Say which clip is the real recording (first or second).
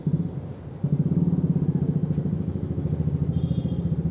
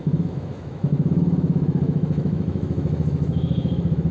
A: first